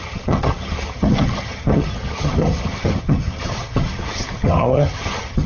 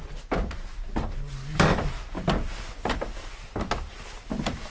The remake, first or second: first